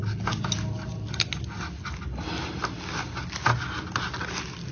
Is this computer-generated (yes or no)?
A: no